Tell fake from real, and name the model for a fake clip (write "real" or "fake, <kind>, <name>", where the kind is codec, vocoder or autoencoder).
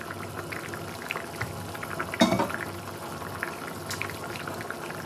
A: real